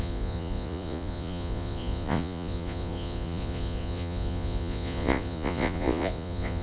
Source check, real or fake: fake